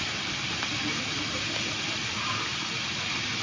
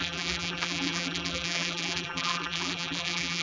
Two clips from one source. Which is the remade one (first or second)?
second